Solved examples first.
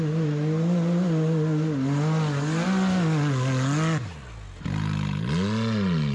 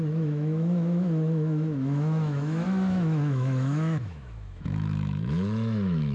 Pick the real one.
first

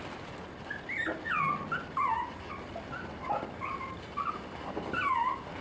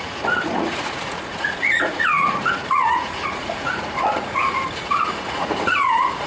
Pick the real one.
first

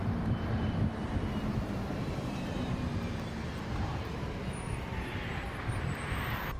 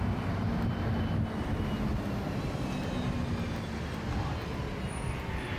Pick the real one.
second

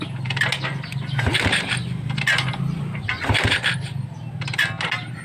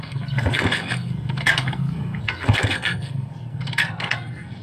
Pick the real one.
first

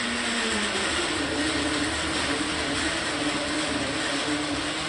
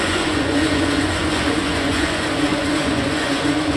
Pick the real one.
first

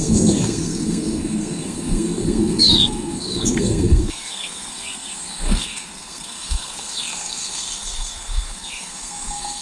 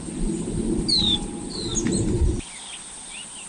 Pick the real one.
second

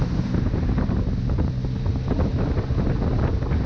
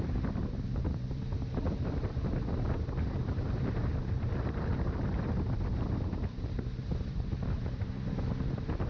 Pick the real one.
first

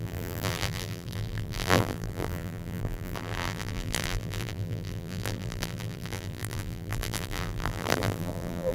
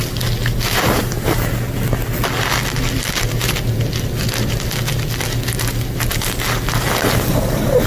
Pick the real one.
second